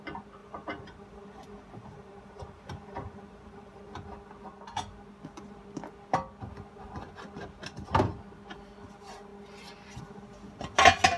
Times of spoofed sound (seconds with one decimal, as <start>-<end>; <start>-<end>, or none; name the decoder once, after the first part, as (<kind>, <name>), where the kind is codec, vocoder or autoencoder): 0.4-3.8 (vocoder, BigVGAN v2)